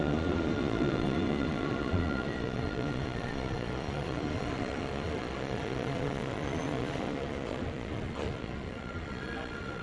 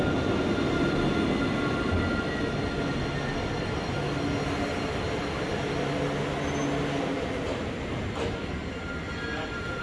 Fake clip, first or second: first